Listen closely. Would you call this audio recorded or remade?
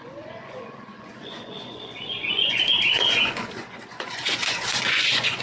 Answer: remade